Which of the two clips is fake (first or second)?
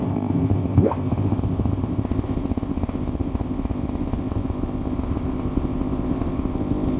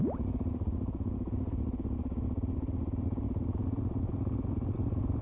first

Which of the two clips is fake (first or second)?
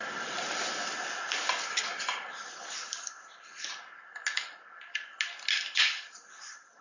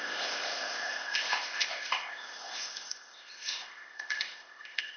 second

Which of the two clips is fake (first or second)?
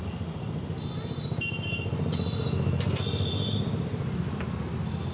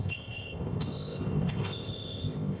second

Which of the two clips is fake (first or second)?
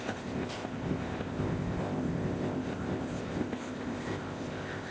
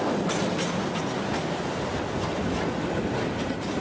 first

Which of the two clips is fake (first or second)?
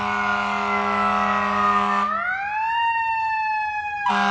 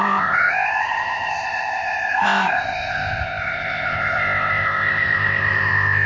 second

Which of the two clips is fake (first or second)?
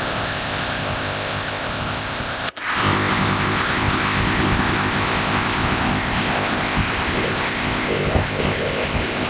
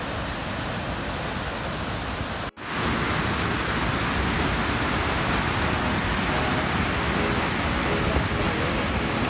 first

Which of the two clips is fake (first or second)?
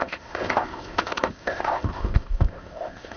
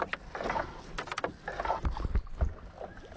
first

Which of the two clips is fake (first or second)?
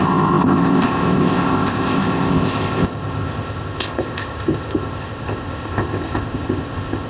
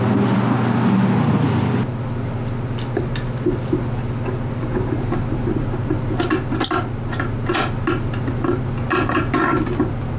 first